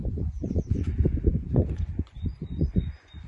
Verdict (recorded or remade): remade